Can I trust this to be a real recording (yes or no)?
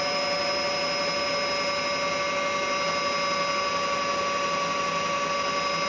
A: yes